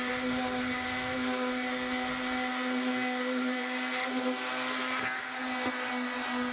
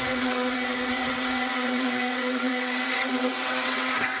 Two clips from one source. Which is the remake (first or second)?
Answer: second